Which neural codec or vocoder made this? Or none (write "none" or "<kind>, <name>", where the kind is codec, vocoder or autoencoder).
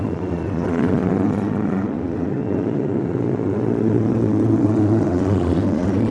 vocoder, Vocos